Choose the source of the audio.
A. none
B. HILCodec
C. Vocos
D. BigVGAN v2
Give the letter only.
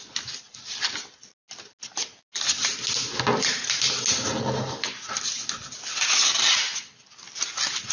A